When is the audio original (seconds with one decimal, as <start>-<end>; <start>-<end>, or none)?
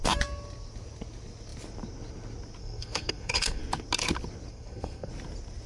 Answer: 0.0-2.6; 3.6-4.5; 5.1-5.7